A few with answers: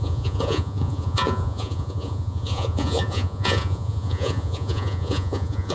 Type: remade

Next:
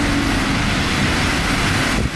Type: recorded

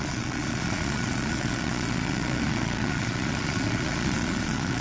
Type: remade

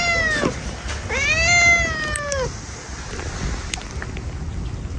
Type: recorded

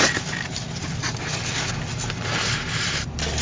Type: recorded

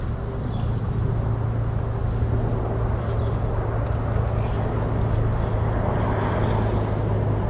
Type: recorded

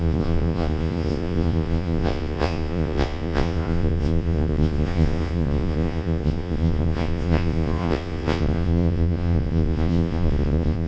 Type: remade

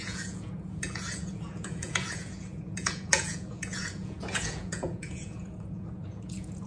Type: remade